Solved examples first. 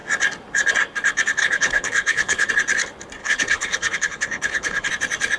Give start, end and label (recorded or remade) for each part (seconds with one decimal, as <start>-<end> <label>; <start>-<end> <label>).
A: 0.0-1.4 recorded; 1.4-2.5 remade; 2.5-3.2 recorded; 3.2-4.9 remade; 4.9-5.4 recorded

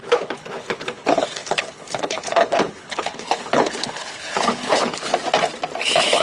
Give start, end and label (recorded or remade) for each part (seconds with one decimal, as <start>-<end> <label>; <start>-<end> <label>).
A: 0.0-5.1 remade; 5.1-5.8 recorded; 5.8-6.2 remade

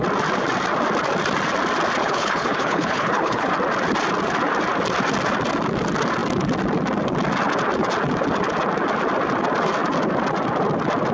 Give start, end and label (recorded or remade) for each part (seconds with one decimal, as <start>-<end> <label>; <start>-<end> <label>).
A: 0.0-2.0 recorded; 2.0-3.5 remade; 3.5-11.1 recorded

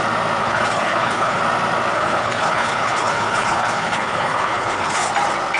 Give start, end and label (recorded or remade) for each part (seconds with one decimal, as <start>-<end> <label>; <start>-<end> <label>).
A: 0.0-0.4 recorded; 0.4-1.4 remade; 1.4-1.9 recorded; 1.9-5.1 remade; 5.1-5.6 recorded

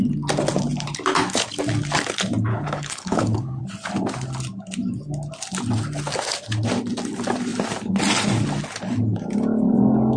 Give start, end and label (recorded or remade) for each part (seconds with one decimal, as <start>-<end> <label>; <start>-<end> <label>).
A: 0.0-2.5 recorded; 2.5-3.6 remade; 3.6-10.2 recorded